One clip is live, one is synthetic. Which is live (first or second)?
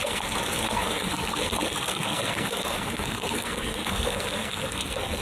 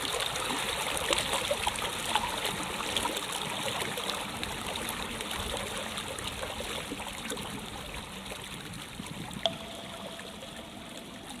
second